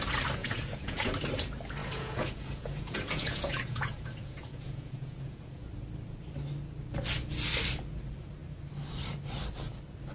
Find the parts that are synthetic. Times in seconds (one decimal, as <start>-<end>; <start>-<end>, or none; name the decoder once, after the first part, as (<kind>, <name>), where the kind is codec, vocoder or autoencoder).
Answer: 0.4-1.1 (vocoder, Vocos); 1.8-5.7